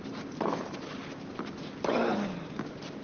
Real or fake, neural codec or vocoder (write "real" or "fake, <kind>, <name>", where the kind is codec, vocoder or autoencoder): real